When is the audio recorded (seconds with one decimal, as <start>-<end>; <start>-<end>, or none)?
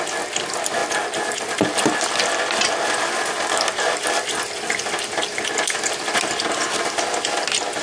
0.0-0.8; 5.5-7.8